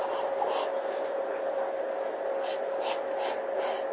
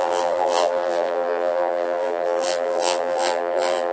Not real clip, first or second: second